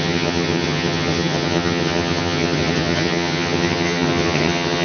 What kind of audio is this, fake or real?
fake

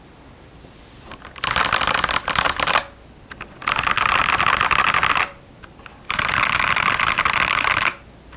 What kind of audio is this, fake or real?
real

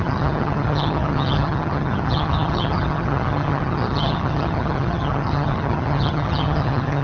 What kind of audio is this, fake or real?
fake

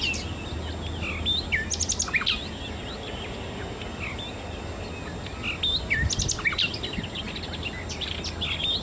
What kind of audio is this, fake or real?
real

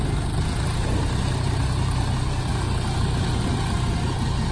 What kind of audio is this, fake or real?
real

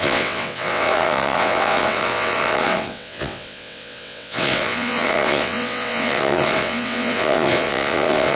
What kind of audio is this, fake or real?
fake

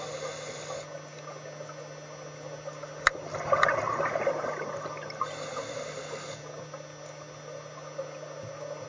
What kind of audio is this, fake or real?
real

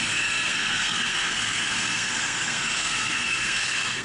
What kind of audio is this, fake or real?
fake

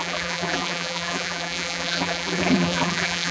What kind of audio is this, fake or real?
fake